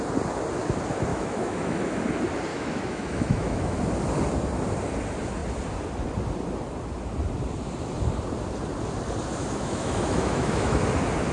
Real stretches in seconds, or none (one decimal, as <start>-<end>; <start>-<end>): 0.0-1.1; 2.0-2.5; 3.8-9.4; 10.8-11.3